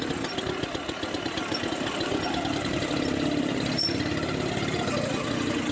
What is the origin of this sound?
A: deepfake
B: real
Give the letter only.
B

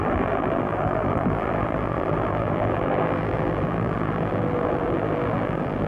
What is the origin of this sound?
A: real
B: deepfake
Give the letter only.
B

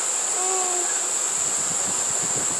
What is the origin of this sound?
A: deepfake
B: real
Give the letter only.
B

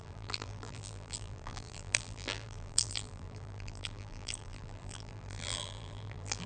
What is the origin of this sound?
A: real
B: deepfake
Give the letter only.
B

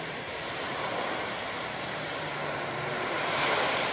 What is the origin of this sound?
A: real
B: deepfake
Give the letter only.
B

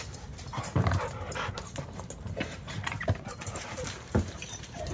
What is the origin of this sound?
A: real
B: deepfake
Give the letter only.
B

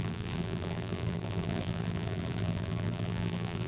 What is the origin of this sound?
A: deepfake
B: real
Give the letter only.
A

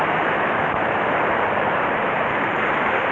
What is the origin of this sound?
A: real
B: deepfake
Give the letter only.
B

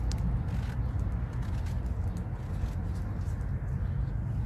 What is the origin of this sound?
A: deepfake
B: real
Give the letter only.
B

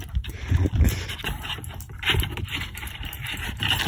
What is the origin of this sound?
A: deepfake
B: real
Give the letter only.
A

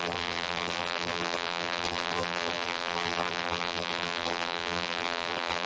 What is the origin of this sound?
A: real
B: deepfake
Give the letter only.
B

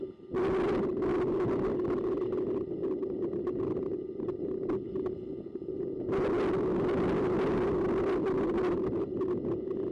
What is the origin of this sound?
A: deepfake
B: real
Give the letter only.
B